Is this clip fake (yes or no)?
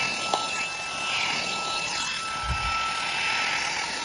no